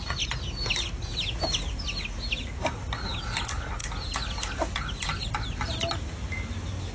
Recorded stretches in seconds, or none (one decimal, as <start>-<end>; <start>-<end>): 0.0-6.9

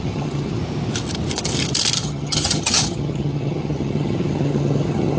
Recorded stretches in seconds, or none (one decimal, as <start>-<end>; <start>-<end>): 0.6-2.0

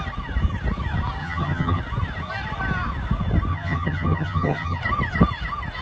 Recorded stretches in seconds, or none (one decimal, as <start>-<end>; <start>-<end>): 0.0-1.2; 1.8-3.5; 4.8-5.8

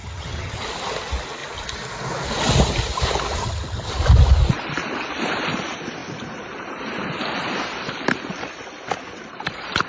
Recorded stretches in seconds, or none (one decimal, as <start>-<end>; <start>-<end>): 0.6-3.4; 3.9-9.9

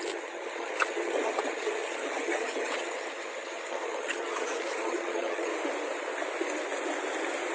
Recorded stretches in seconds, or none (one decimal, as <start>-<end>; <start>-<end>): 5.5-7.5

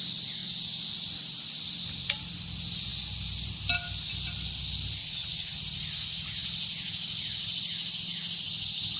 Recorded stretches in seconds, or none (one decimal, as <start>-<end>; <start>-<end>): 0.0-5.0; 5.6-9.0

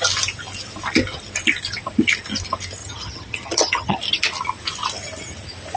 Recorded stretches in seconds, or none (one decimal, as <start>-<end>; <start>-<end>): 0.0-2.8; 4.0-5.8